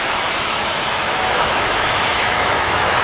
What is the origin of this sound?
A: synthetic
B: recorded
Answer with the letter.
A